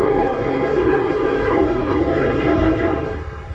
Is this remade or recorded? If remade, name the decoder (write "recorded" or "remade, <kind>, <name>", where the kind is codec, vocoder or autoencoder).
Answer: remade, codec, SNAC